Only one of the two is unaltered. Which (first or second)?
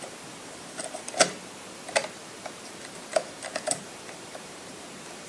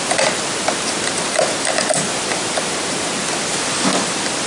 second